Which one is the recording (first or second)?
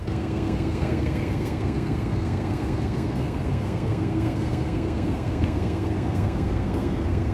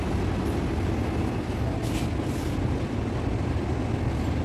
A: second